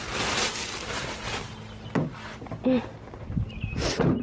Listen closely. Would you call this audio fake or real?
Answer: real